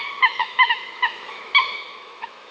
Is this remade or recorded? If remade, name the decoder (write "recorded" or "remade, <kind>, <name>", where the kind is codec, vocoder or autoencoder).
remade, autoencoder, DAC-VAE